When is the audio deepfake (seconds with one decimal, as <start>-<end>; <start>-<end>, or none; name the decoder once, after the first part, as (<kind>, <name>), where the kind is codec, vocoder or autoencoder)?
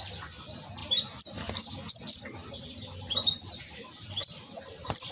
2.4-5.1 (vocoder, BigVGAN v2)